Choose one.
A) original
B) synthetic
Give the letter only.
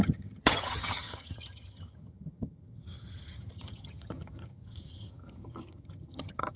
B